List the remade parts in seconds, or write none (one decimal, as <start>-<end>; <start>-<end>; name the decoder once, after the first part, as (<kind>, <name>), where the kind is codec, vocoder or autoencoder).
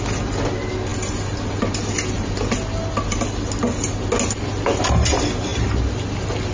none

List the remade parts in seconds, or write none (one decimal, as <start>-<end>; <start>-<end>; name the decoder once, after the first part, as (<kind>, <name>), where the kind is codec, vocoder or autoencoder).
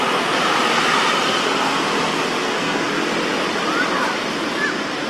2.4-2.9 (codec, SNAC)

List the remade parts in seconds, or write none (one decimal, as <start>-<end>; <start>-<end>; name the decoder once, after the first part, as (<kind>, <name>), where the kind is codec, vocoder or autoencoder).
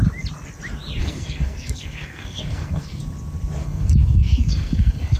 1.0-3.0 (codec, SNAC); 3.6-5.2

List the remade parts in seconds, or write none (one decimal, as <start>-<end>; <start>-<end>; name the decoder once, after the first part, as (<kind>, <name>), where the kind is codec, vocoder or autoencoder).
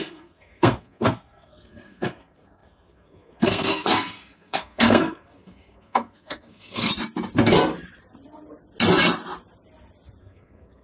0.0-6.9 (codec, SNAC); 10.2-10.8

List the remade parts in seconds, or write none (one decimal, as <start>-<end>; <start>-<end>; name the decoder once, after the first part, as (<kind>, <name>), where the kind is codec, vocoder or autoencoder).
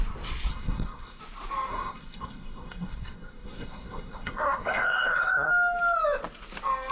0.5-1.2 (codec, SNAC); 1.7-5.5